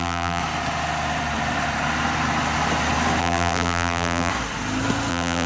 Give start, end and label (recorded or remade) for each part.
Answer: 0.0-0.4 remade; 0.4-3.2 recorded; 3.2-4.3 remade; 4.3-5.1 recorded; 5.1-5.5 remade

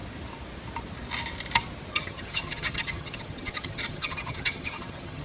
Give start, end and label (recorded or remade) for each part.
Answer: 0.0-1.9 recorded; 1.9-5.2 remade